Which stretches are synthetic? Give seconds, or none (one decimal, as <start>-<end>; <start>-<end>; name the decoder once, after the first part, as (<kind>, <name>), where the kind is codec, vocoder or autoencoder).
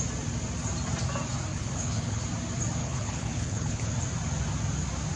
1.5-2.2 (codec, HILCodec); 2.8-3.9